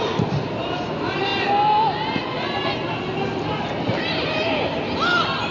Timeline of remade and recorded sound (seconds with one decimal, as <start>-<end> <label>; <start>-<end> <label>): 0.0-1.3 remade; 1.3-3.7 recorded; 3.7-5.5 remade